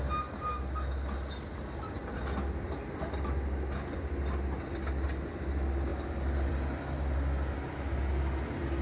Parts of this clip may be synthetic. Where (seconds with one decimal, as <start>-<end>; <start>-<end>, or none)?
none